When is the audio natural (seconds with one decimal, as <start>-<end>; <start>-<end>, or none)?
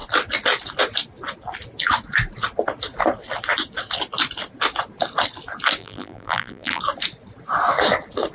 0.0-5.8; 6.8-8.3